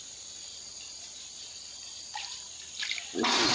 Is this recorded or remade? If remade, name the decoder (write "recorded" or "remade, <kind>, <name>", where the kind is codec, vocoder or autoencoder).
remade, vocoder, BigVGAN v2